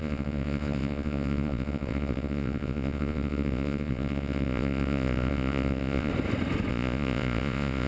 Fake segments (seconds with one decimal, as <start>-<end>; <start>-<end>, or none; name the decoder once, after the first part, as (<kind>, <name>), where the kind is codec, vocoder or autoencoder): 0.0-6.1 (vocoder, Vocos); 6.7-7.9

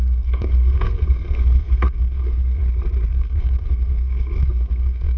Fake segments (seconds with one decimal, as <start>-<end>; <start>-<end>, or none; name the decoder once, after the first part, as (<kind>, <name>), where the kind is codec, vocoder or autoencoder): 0.0-2.6 (codec, SNAC); 3.1-5.2

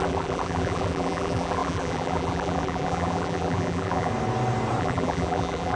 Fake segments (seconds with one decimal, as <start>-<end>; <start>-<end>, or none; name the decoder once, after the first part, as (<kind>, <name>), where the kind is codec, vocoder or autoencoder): 0.0-4.1 (vocoder, BigVGAN v2); 4.8-5.8

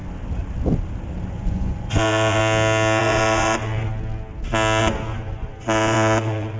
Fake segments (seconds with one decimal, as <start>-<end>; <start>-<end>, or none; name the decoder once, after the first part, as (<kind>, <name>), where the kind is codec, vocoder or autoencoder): 1.3-2.4 (vocoder, Vocos); 3.0-3.9; 4.8-6.6

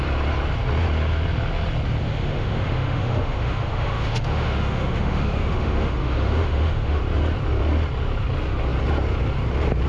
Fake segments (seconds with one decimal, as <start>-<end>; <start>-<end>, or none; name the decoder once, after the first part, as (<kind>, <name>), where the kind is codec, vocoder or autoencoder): 2.0-7.0 (autoencoder, DAC-VAE)

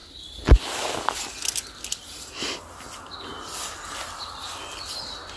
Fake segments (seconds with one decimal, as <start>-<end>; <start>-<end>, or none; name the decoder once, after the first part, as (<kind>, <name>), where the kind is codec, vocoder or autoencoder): none

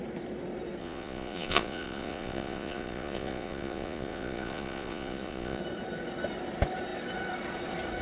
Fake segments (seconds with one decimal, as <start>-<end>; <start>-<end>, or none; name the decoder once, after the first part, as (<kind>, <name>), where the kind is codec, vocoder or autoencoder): 0.8-5.6 (vocoder, Vocos)